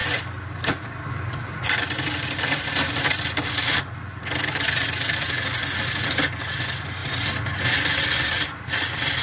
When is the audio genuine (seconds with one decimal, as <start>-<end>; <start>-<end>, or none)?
0.0-9.2